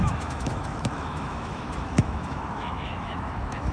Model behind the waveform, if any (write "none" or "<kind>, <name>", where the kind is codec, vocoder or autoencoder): autoencoder, DAC-VAE